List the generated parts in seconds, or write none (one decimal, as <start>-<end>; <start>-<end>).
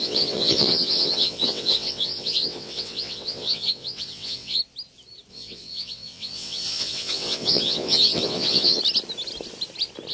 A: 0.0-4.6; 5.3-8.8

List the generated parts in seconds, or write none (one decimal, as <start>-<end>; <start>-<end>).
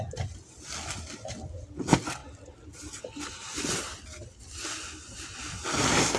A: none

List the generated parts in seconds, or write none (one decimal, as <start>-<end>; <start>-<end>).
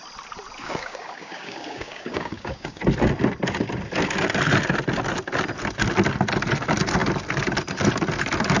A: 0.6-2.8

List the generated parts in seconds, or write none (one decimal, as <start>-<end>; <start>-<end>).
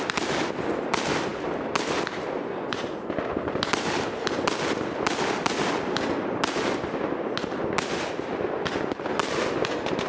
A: none